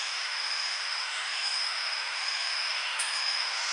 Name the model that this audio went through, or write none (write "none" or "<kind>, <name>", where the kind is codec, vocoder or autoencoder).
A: autoencoder, DAC-VAE